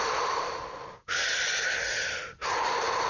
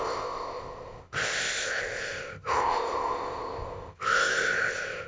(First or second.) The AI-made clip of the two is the second